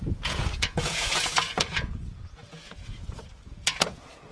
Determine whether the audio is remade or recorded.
remade